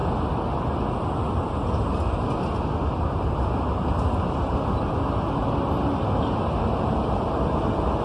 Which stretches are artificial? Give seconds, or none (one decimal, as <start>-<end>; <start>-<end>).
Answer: none